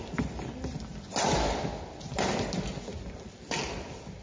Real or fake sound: real